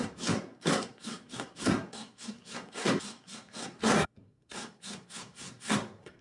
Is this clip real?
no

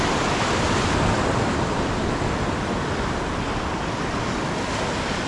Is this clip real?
yes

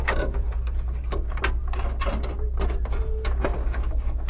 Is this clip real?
yes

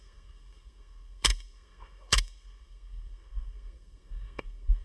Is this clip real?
no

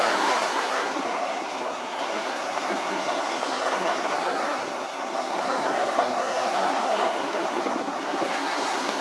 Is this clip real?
no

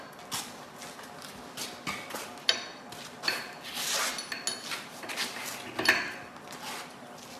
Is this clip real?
yes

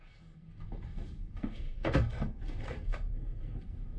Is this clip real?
no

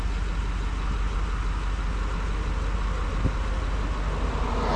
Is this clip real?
yes